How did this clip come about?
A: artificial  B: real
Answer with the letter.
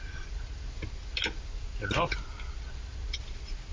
B